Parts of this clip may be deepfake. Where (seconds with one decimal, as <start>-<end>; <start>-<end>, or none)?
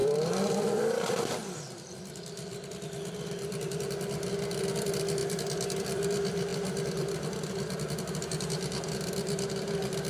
0.0-10.1